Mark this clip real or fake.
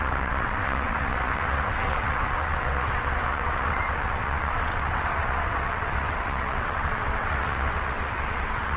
fake